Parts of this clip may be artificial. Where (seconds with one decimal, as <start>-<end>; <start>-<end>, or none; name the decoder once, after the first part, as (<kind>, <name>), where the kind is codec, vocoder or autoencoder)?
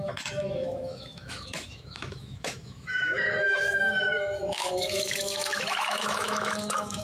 0.0-7.0 (autoencoder, DAC-VAE)